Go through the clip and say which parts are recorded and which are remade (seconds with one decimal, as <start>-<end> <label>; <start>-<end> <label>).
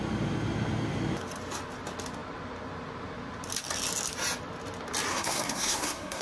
0.0-5.1 recorded; 5.1-6.2 remade